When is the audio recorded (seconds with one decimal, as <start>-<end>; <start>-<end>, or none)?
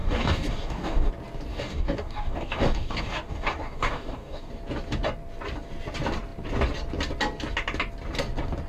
1.1-1.5; 4.5-8.7